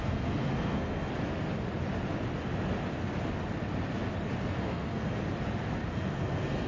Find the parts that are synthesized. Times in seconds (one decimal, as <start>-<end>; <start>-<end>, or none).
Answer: 0.0-1.1; 4.6-5.2; 5.9-6.7